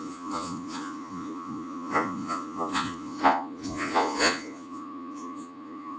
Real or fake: fake